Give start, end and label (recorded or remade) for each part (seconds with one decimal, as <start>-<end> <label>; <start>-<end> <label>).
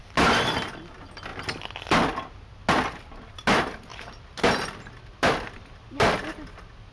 0.0-3.9 recorded; 3.9-6.9 remade